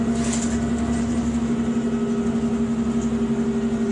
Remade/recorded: recorded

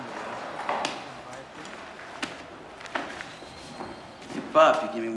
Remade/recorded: recorded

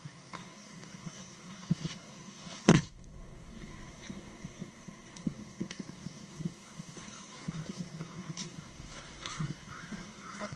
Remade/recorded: remade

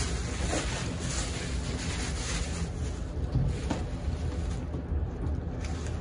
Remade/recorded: recorded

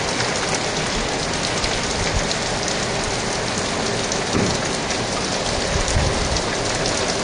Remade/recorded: recorded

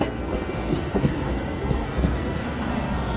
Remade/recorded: remade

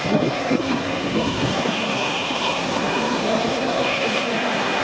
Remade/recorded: remade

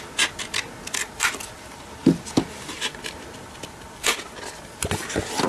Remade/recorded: recorded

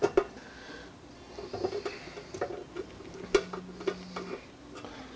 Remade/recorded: recorded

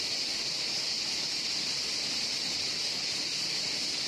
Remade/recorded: recorded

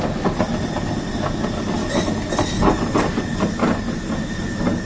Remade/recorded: recorded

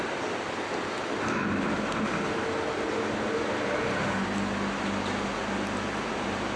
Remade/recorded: recorded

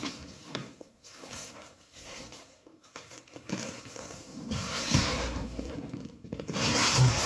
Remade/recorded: remade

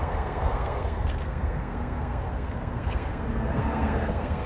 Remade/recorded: remade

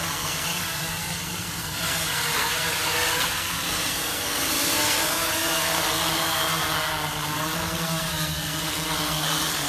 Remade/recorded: remade